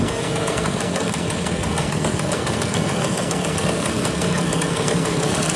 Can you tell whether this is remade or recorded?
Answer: remade